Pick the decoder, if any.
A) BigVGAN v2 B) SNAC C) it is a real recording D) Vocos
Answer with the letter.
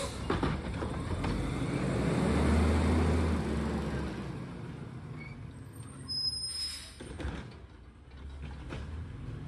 C